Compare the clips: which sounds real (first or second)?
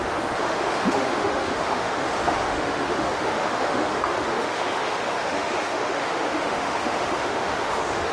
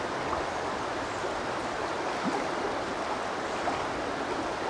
second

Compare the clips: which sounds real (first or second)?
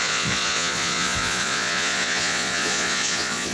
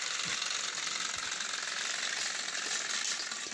second